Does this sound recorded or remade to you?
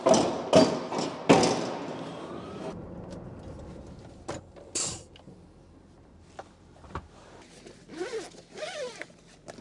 recorded